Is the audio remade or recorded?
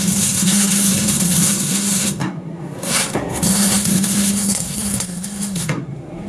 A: remade